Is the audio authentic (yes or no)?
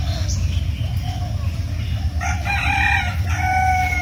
yes